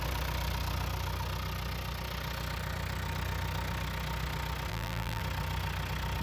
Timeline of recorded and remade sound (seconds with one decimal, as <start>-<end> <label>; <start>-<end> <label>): 0.0-4.7 recorded; 4.7-5.2 remade; 5.2-6.2 recorded

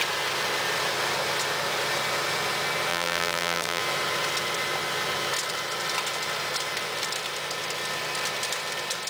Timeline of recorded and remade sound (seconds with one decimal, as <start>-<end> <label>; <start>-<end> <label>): 0.0-2.9 recorded; 2.9-3.8 remade; 3.8-9.1 recorded

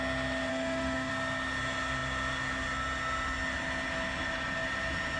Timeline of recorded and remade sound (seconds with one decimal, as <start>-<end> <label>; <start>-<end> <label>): 0.0-0.5 recorded; 0.5-1.1 remade; 1.1-5.2 recorded

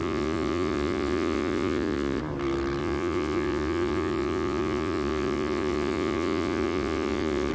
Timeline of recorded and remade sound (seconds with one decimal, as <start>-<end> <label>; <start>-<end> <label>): 0.0-2.2 remade; 2.2-2.8 recorded; 2.8-7.5 remade

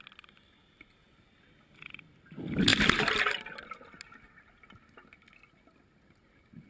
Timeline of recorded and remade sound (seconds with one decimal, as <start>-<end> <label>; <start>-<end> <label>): 0.0-6.7 recorded